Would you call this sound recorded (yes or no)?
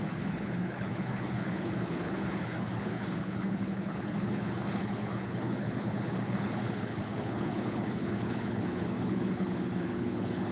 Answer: no